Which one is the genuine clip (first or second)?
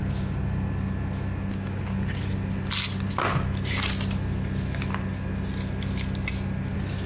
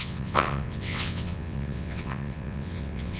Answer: first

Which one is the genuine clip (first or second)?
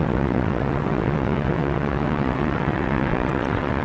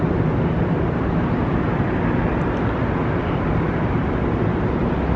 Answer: second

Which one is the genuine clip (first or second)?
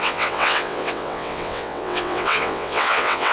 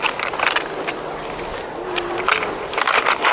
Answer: second